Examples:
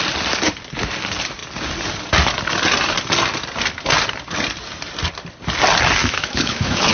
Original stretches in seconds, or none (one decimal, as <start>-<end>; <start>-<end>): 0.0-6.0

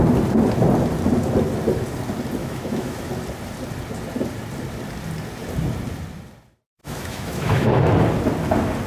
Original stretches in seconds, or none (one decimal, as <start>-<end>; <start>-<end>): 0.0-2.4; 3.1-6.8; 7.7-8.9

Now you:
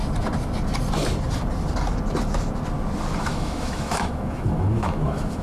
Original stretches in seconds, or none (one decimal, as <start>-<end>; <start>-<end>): 0.0-3.2